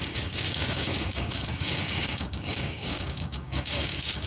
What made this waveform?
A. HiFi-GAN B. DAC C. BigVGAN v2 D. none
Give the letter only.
B